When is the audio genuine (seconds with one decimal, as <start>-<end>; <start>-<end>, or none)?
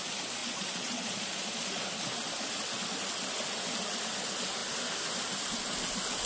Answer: 0.0-0.4; 1.8-6.3